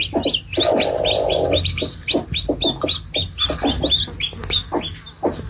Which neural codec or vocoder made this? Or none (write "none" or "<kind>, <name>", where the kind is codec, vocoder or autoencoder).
none